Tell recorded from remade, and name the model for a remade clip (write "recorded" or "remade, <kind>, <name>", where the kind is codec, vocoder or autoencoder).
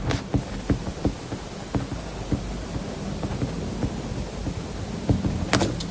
recorded